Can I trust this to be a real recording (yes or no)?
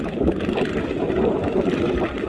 yes